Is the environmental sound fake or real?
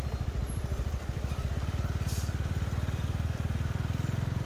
fake